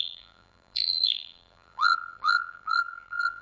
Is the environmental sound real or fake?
fake